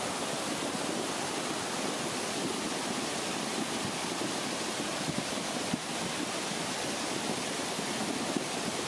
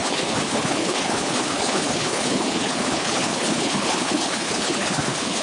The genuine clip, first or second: first